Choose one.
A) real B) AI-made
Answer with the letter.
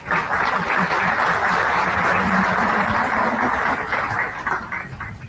A